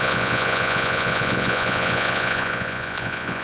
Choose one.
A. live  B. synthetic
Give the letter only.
B